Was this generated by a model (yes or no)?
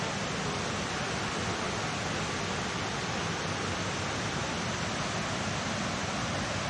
no